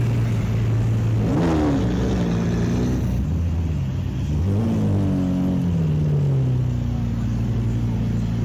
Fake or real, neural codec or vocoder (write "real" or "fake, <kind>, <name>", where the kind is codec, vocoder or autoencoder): real